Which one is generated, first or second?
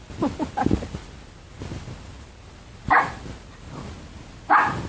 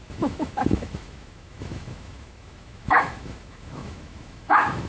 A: second